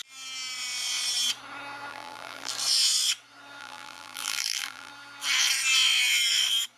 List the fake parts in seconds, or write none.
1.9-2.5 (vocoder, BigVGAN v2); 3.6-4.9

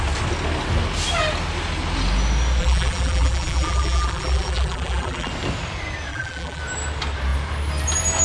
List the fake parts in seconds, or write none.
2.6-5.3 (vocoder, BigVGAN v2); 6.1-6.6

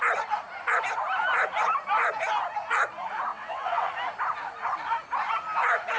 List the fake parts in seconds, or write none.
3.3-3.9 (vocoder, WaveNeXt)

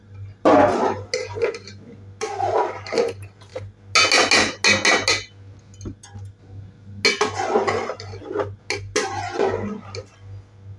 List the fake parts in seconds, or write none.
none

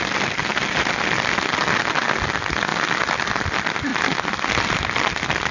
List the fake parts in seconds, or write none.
none